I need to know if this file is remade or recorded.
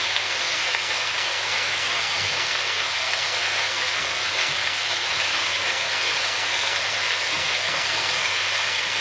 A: remade